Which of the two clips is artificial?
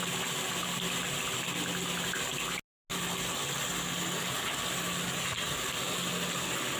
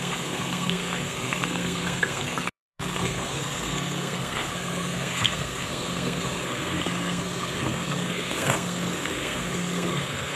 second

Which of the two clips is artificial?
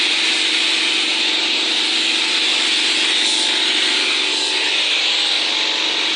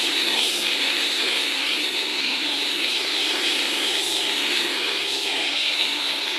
second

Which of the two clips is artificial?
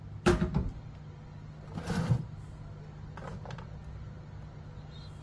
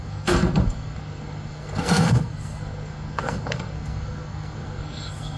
second